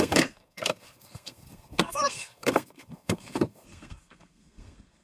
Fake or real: fake